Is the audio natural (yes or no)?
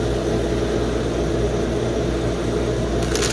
yes